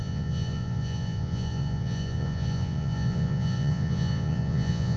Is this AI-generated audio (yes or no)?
yes